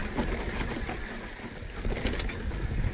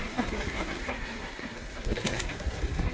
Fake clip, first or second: second